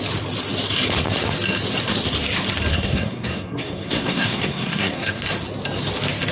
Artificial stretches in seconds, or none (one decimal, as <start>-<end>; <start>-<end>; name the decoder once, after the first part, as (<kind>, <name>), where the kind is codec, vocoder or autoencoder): 2.7-5.2 (codec, SNAC)